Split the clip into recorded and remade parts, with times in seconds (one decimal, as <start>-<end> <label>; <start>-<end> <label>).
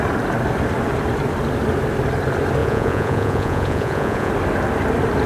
0.0-2.6 recorded; 2.6-4.3 remade; 4.3-5.3 recorded